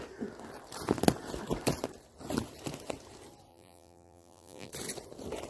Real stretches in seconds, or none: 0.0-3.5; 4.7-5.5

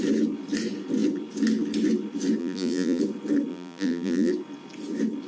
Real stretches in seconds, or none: 0.0-2.4; 3.0-3.5; 4.3-5.3